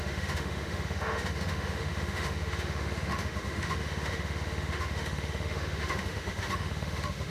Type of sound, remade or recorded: remade